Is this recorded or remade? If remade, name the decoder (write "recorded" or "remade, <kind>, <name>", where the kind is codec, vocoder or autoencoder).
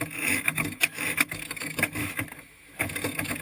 remade, autoencoder, DAC-VAE